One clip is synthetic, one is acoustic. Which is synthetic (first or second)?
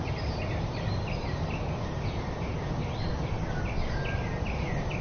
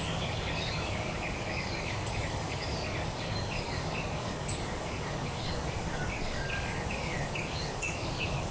second